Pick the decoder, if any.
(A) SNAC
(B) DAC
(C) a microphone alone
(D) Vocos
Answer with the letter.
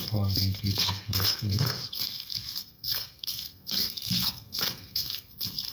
A